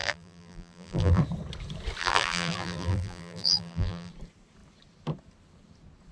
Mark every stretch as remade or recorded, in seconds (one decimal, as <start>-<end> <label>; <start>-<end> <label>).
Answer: 0.0-1.2 remade; 1.2-2.0 recorded; 2.0-4.1 remade; 4.1-6.1 recorded